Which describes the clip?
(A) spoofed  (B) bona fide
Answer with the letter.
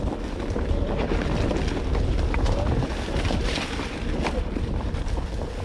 B